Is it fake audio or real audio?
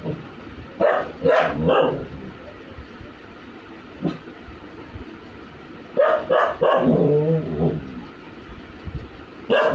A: real